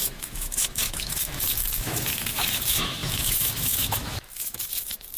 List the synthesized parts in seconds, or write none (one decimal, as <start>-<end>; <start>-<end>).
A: 0.0-5.2

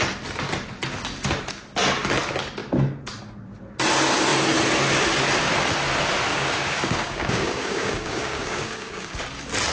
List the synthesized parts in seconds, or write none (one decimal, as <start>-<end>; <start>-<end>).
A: 6.3-9.2

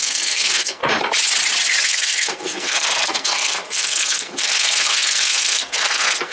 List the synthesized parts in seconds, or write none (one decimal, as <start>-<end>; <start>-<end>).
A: 0.0-0.8; 1.8-6.3

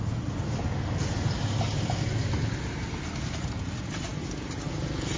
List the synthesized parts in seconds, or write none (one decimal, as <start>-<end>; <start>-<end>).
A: none

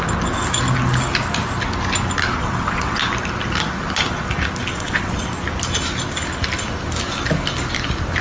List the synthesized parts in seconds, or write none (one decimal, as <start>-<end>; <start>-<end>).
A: 2.4-3.0; 4.7-5.2

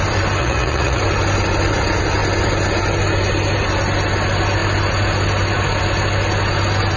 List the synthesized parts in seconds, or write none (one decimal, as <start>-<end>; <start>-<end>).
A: 0.4-1.0

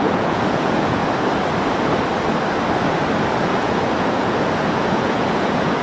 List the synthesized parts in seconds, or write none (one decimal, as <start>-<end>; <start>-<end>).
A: 0.0-1.0; 3.4-5.8

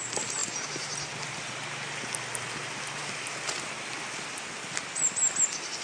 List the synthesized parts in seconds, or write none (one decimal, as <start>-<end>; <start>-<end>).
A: none